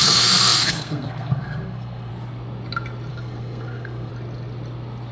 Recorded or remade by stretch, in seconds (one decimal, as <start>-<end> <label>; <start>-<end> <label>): 0.0-2.1 remade; 2.1-3.1 recorded; 3.1-4.1 remade; 4.1-5.1 recorded